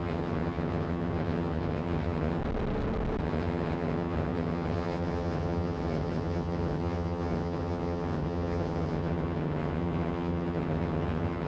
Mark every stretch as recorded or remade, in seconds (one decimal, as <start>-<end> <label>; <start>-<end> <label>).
0.0-2.4 remade; 2.4-3.2 recorded; 3.2-11.5 remade